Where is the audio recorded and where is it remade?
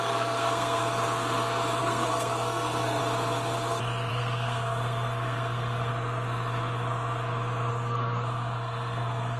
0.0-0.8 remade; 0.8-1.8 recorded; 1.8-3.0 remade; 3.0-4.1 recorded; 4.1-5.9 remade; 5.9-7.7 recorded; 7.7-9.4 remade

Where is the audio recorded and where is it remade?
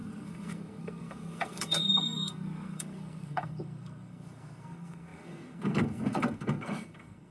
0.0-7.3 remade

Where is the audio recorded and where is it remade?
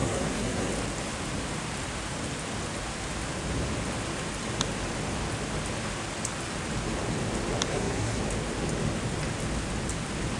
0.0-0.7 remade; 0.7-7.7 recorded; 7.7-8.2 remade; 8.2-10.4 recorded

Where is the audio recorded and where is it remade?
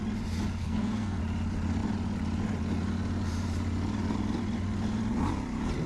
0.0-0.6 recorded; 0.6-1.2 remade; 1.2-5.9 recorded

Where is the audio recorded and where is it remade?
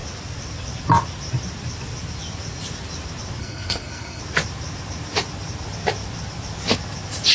0.0-3.4 recorded; 3.4-4.2 remade; 4.2-7.3 recorded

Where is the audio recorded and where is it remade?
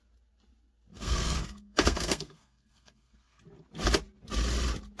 0.0-0.9 recorded; 0.9-3.4 remade; 3.4-5.0 recorded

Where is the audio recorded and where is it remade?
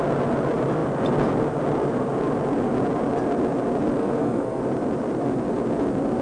0.0-4.0 recorded; 4.0-4.6 remade; 4.6-6.2 recorded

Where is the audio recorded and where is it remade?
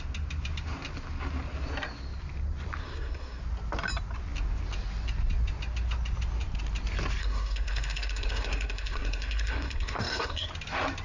0.0-2.8 recorded; 2.8-3.4 remade; 3.4-7.2 recorded; 7.2-10.5 remade; 10.5-11.0 recorded